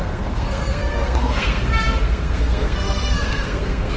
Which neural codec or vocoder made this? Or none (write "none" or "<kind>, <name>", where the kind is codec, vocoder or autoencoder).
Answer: codec, SNAC